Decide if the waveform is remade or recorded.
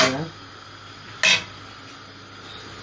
recorded